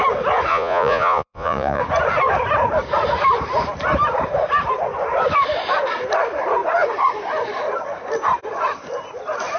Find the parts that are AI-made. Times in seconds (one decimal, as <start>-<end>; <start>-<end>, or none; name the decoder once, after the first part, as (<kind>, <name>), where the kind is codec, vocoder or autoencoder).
0.5-1.8 (vocoder, Vocos)